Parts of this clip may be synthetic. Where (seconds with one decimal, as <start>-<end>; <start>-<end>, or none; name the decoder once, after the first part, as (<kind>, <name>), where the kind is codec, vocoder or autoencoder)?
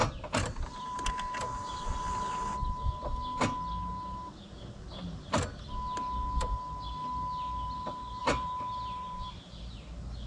0.0-1.1 (vocoder, BigVGAN v2); 8.2-10.3